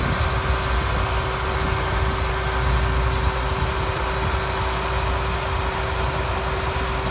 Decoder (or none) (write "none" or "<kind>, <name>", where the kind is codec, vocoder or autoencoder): none